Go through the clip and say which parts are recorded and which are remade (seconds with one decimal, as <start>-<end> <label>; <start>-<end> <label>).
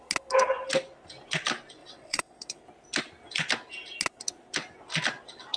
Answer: 0.0-1.8 recorded; 1.8-2.6 remade; 2.6-5.6 recorded